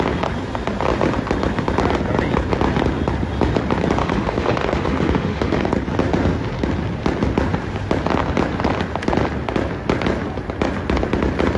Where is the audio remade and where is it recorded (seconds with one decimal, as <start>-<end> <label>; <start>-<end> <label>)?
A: 0.0-4.0 recorded; 4.0-5.7 remade; 5.7-11.6 recorded